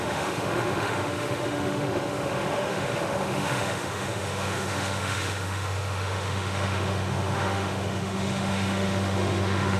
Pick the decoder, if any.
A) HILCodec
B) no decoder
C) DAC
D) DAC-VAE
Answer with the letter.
D